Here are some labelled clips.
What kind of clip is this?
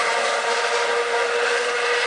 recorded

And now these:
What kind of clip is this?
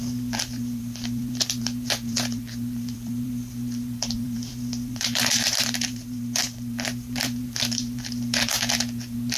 remade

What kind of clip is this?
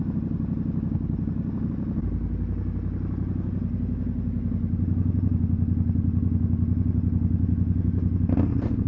recorded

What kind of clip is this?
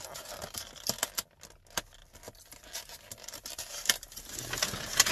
recorded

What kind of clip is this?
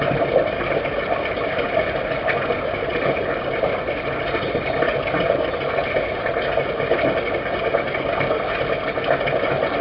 recorded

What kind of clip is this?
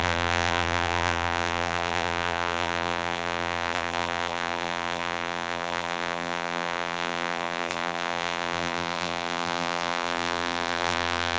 remade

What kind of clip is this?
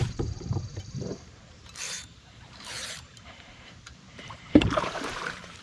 remade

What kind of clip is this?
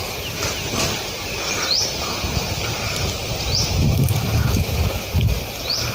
recorded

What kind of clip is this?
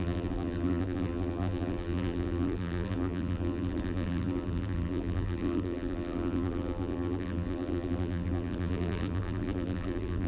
remade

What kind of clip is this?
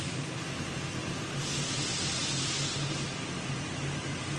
recorded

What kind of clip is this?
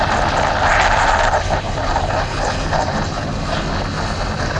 recorded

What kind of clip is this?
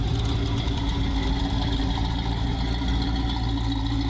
recorded